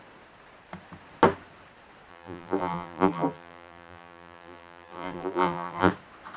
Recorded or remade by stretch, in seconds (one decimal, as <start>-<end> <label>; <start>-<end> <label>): 0.0-2.1 recorded; 2.1-5.9 remade; 5.9-6.4 recorded